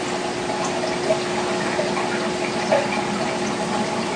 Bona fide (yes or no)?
yes